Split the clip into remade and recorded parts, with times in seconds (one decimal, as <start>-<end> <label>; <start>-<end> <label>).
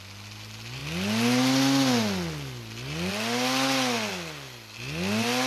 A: 0.0-5.5 recorded